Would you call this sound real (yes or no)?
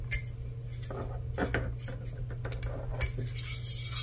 yes